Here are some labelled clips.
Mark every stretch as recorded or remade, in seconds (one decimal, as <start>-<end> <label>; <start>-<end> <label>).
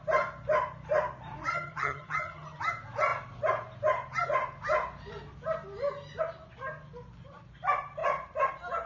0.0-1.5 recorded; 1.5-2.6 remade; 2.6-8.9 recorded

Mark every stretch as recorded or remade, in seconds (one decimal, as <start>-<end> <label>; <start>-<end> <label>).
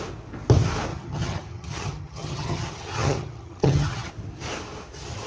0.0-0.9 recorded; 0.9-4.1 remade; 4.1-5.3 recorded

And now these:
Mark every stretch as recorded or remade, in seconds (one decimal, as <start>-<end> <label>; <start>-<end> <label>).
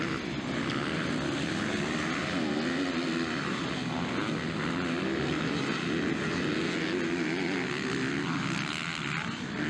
0.0-9.7 recorded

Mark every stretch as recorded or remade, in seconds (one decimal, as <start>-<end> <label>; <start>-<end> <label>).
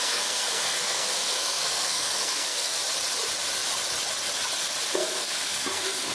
0.0-2.8 remade; 2.8-4.9 recorded; 4.9-6.1 remade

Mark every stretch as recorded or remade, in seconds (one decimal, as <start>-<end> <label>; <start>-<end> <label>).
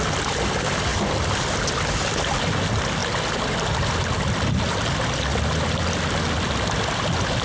0.0-7.4 recorded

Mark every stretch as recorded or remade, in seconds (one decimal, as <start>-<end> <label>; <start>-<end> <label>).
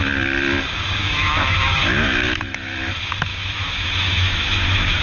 0.0-1.0 recorded; 1.0-2.9 remade; 2.9-3.3 recorded; 3.3-5.0 remade